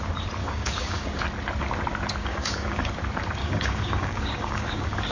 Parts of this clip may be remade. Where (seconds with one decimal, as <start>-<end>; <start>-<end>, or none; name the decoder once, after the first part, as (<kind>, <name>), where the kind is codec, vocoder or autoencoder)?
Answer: 0.4-1.2 (codec, DAC); 2.2-2.9; 3.4-5.1